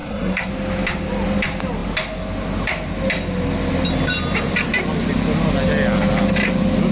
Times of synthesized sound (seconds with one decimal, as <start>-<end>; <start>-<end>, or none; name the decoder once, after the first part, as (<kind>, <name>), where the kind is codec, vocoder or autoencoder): 0.0-0.5 (codec, SNAC)